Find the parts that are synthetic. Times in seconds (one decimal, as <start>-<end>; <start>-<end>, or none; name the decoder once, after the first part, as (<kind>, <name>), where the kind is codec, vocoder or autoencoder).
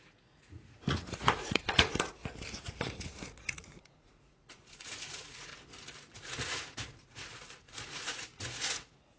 0.0-2.2 (vocoder, Vocos); 2.8-5.5; 6.2-9.2